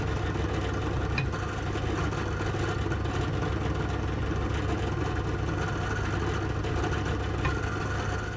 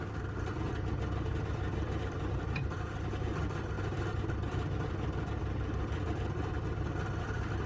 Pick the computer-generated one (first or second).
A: second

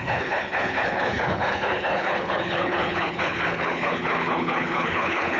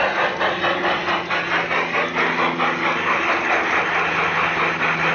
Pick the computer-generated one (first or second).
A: first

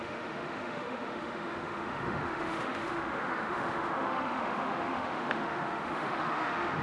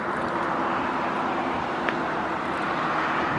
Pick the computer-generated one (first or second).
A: first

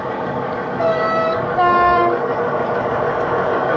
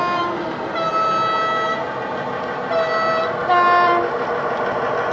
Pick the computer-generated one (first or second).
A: first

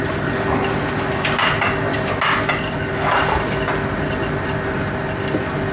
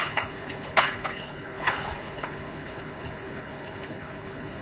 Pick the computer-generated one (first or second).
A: second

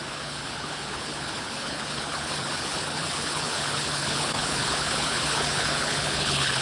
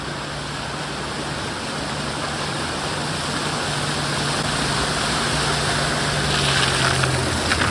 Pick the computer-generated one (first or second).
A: first